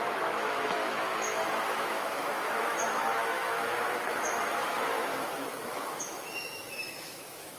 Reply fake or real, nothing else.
fake